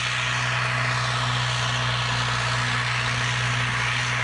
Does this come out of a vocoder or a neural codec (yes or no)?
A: no